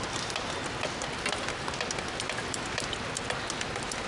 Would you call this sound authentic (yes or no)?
yes